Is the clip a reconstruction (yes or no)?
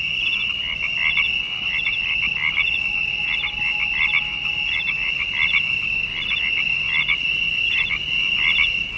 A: no